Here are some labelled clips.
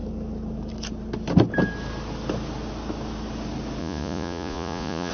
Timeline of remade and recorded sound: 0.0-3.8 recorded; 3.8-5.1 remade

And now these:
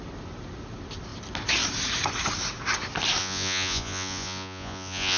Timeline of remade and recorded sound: 0.0-3.2 recorded; 3.2-5.2 remade

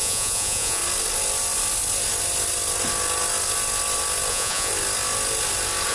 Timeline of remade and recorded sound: 0.0-0.8 remade; 0.8-4.3 recorded; 4.3-4.7 remade; 4.7-5.9 recorded

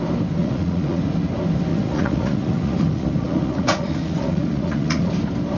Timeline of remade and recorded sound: 0.0-0.4 recorded; 0.4-1.0 remade; 1.0-1.7 recorded; 1.7-5.1 remade; 5.1-5.6 recorded

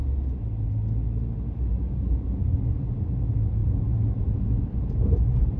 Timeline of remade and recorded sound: 0.0-3.6 recorded; 3.6-4.6 remade; 4.6-5.6 recorded

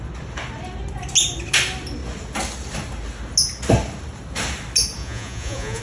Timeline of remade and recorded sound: 0.0-5.0 recorded; 5.0-5.8 remade

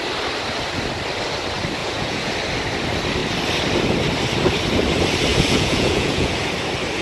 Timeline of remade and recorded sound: 0.0-1.8 recorded; 1.8-2.3 remade; 2.3-5.3 recorded; 5.3-6.3 remade; 6.3-7.0 recorded

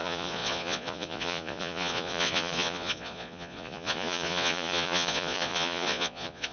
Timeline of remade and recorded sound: 0.0-6.5 remade